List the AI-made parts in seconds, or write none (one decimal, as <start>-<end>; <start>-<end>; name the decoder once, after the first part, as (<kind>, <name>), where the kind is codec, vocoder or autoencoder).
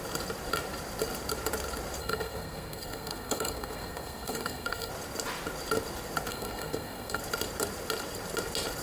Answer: 2.0-4.9 (codec, SNAC); 6.3-7.2